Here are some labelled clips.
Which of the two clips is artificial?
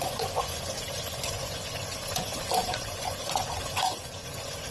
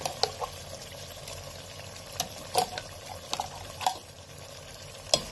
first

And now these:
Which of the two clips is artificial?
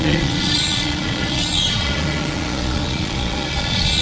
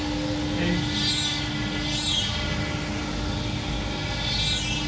first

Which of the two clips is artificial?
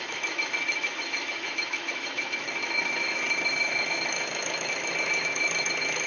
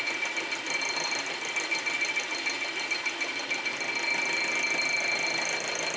first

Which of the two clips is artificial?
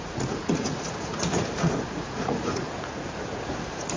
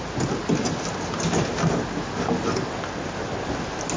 first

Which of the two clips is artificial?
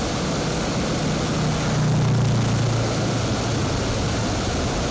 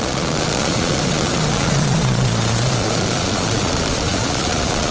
second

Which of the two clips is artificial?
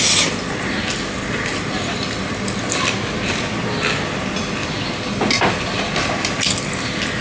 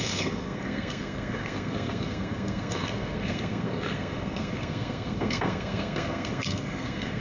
second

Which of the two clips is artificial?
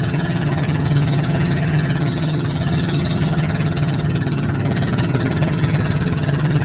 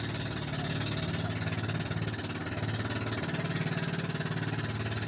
first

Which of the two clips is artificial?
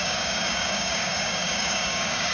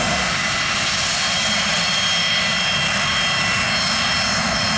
first